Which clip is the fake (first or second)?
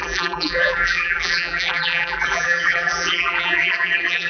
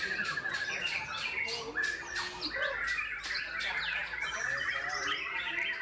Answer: first